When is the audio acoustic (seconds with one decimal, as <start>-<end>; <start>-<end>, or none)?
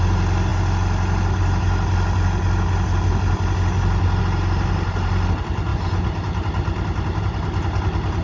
0.0-8.2